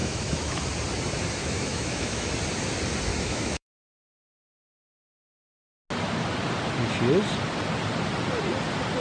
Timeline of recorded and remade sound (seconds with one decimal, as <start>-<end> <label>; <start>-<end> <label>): 0.0-0.6 remade; 0.6-1.4 recorded; 1.4-2.3 remade; 2.3-3.1 recorded; 3.1-3.9 remade; 3.9-9.0 recorded